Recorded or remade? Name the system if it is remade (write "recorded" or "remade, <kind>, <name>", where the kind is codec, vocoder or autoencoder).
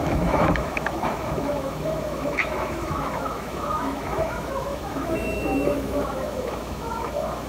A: remade, autoencoder, DAC-VAE